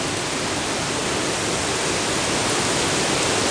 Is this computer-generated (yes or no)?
no